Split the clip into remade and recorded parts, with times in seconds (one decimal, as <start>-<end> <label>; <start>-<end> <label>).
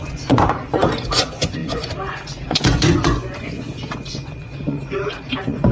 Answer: 0.0-5.7 remade